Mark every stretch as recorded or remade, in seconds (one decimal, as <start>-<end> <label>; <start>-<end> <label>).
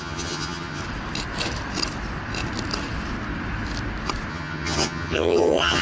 0.0-0.8 remade; 0.8-4.3 recorded; 4.3-5.8 remade